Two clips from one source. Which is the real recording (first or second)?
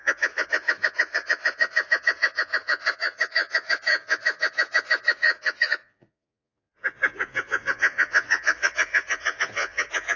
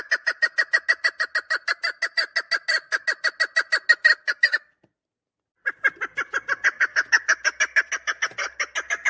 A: second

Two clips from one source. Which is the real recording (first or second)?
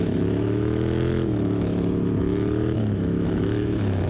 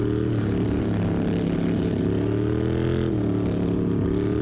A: second